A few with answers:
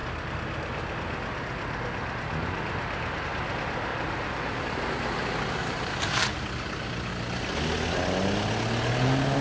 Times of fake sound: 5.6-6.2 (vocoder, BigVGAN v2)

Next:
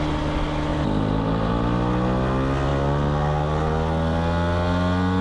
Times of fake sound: 0.7-1.5 (vocoder, BigVGAN v2)

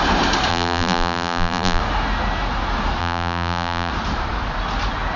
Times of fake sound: 0.5-1.8 (vocoder, BigVGAN v2); 3.0-3.9

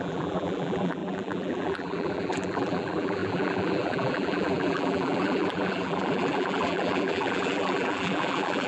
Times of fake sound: 0.0-8.7 (vocoder, BigVGAN v2)

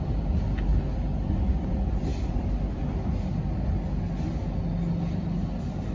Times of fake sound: 0.7-1.3 (vocoder, BigVGAN v2)

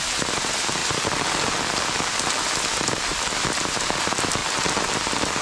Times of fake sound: 0.0-0.8 (vocoder, BigVGAN v2); 4.0-4.4

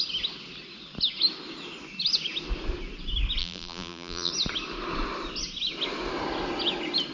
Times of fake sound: 3.4-4.3 (vocoder, BigVGAN v2)